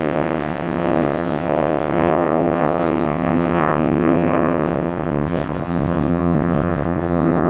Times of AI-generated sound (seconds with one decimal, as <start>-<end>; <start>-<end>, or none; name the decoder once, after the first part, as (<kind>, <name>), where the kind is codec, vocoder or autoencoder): 0.0-7.5 (vocoder, WaveNeXt)